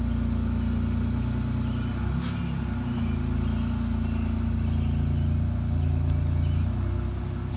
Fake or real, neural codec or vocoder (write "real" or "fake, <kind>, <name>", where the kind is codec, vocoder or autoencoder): real